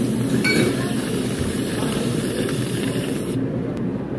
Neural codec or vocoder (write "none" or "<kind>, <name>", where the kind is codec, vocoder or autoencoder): vocoder, BigVGAN v2